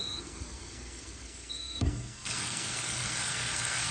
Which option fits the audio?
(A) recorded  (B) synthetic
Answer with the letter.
B